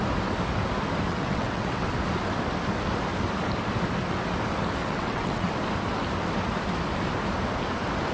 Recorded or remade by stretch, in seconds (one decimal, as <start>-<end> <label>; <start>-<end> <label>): 0.0-1.1 recorded; 1.1-1.9 remade; 1.9-4.8 recorded; 4.8-5.5 remade; 5.5-8.1 recorded